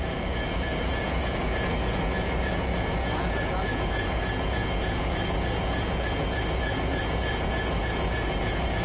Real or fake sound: fake